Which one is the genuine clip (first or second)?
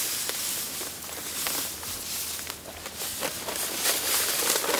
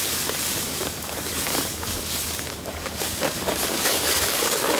first